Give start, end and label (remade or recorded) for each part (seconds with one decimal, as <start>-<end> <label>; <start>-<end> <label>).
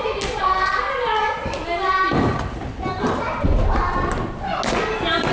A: 0.0-0.4 recorded; 0.4-0.9 remade; 0.9-5.3 recorded